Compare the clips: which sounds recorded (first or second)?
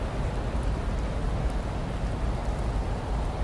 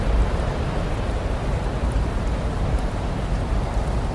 first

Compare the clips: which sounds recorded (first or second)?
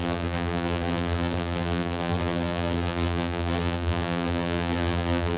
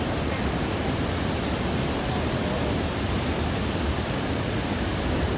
second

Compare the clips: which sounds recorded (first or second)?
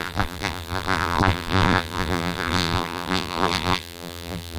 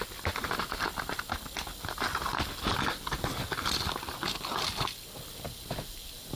second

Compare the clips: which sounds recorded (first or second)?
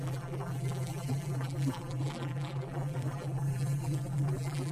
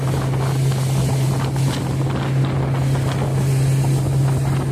second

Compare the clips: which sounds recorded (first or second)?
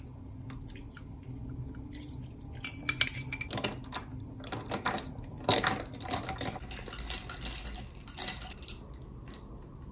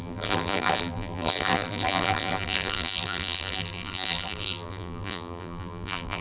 first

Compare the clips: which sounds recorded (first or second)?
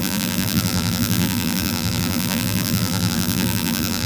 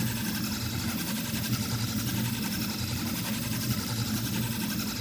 second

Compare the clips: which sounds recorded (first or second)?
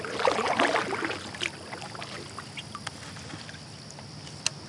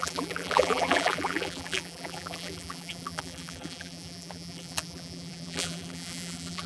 first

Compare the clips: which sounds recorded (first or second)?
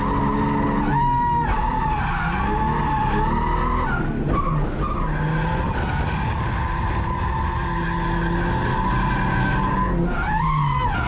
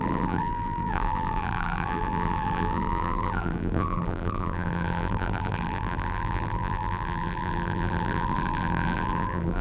first